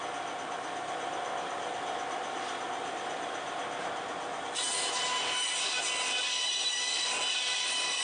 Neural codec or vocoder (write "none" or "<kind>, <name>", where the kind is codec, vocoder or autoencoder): none